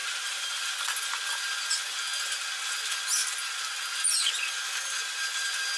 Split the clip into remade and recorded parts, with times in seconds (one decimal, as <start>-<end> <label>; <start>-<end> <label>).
0.0-0.7 remade; 0.7-5.8 recorded